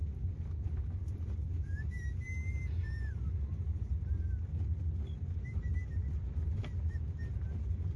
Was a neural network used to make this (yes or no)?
no